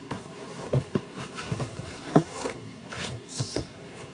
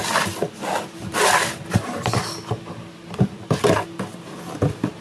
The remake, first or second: first